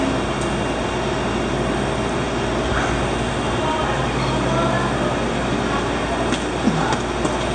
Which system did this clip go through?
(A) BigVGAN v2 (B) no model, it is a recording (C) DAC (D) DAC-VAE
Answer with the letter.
B